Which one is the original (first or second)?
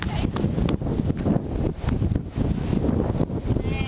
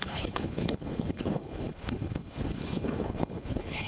first